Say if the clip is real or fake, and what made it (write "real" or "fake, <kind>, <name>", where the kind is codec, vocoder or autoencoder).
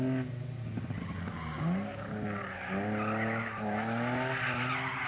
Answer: real